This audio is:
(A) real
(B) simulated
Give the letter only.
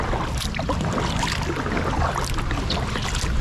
A